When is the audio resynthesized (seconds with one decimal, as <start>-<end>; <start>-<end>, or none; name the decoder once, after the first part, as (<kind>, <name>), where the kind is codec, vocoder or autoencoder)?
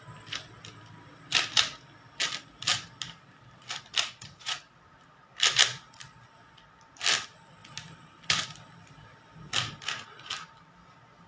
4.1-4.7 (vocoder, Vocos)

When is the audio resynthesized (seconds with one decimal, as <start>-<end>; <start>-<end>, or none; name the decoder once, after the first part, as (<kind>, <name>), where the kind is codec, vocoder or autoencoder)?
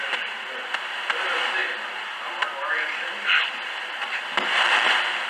none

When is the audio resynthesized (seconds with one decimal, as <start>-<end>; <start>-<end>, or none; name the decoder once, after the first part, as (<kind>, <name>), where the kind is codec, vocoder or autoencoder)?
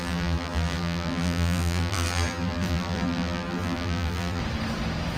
0.0-4.4 (vocoder, BigVGAN v2)